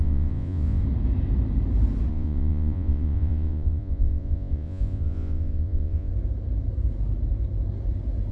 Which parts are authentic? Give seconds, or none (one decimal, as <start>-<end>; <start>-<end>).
0.8-2.1; 6.1-8.3